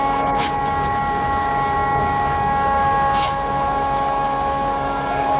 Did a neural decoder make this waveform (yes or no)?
yes